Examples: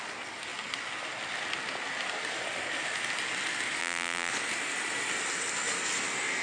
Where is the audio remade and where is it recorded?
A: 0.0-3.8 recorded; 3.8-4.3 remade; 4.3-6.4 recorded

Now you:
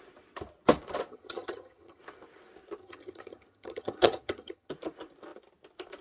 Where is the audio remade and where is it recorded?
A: 0.0-1.1 recorded; 1.1-2.0 remade; 2.0-2.8 recorded; 2.8-4.7 remade; 4.7-6.0 recorded

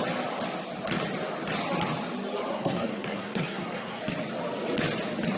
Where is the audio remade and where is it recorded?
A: 0.0-2.5 recorded; 2.5-4.0 remade; 4.0-5.4 recorded

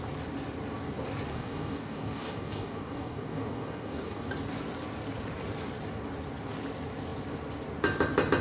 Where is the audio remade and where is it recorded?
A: 0.0-1.3 recorded; 1.3-4.3 remade; 4.3-8.4 recorded

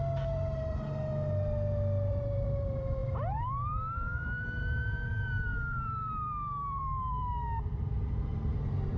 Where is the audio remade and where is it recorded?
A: 0.0-1.1 remade; 1.1-2.1 recorded; 2.1-9.0 remade